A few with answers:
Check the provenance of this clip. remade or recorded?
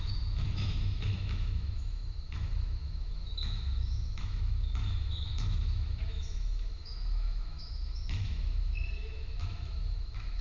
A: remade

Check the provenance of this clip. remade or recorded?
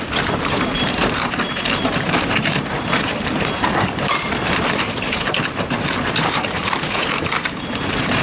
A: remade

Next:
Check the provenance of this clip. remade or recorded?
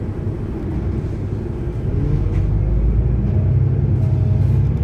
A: recorded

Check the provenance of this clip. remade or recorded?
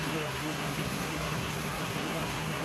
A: remade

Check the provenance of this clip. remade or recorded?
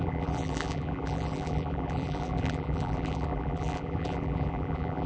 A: remade